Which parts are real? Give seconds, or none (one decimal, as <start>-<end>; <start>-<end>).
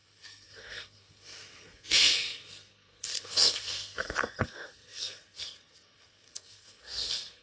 none